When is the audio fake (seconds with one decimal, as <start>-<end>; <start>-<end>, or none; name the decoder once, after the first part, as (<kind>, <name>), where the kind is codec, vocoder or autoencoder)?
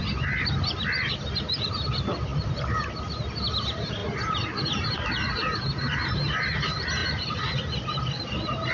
0.0-2.3 (vocoder, BigVGAN v2); 3.1-4.0; 5.9-8.7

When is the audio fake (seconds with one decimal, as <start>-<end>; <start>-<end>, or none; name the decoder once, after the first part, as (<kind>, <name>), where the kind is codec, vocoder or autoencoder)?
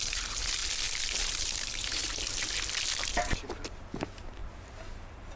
0.0-0.6 (vocoder, BigVGAN v2); 1.2-2.0; 3.1-5.4